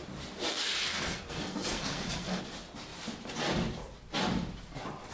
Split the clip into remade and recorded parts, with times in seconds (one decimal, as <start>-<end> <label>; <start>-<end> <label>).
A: 0.0-0.5 recorded; 0.5-2.4 remade; 2.4-5.1 recorded